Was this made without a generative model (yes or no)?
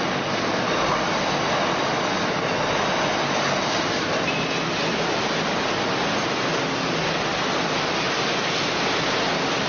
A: yes